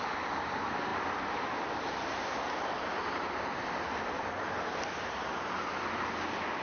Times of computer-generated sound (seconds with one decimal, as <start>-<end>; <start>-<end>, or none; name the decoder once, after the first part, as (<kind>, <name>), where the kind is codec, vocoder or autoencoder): none